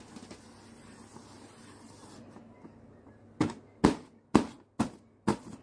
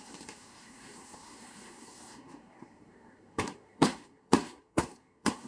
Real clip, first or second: first